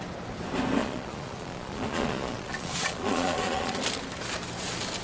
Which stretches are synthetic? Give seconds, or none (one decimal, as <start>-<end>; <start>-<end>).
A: 0.8-3.8